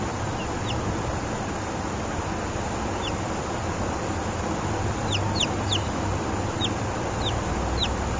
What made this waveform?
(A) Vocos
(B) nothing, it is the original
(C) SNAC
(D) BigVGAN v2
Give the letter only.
B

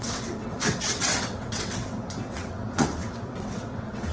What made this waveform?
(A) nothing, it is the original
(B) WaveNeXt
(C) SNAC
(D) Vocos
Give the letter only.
B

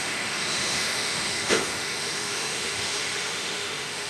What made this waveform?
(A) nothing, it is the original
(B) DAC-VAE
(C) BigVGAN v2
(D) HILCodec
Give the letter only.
B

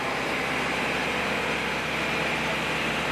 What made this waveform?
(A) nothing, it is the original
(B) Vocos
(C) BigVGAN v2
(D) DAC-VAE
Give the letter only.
A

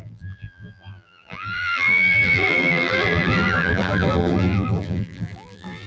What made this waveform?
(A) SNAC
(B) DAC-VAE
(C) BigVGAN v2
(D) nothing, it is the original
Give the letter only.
C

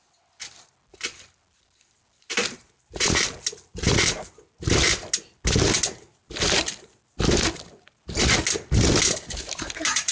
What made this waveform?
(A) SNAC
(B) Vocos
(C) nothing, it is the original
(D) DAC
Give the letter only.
C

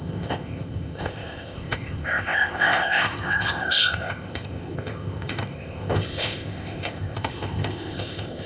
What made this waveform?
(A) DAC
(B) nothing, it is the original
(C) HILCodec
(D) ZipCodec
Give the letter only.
D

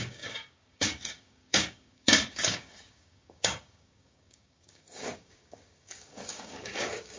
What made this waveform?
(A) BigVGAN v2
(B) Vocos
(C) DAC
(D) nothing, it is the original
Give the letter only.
C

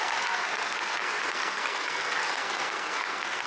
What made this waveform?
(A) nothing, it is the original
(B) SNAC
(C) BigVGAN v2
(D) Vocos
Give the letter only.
B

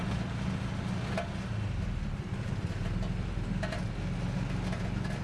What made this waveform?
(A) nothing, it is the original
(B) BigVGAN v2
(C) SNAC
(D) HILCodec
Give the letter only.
A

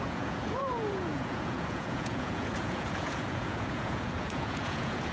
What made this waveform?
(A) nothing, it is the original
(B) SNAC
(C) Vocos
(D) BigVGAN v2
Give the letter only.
C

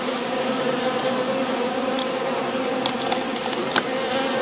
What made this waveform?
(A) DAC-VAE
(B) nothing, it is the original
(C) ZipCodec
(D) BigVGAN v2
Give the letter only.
B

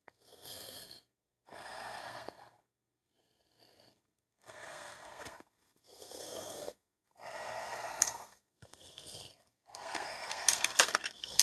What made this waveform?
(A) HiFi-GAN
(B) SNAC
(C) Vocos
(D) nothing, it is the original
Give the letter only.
B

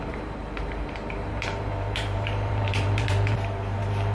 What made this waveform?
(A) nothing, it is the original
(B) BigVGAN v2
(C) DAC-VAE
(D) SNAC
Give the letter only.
B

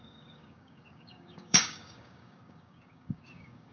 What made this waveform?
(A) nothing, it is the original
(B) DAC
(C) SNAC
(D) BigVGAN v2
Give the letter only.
B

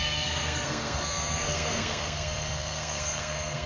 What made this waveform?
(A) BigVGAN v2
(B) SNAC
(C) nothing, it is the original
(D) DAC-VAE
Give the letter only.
B